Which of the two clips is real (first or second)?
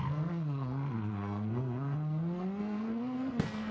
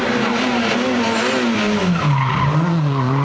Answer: second